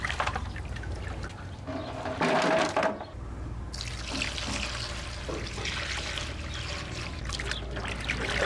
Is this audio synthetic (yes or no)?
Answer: no